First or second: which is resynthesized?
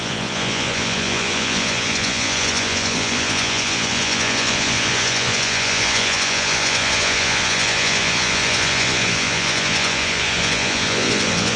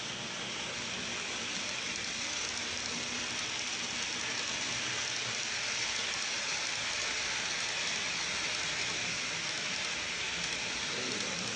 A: first